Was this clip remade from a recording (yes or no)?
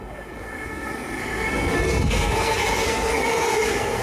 yes